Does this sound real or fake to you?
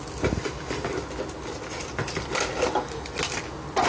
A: real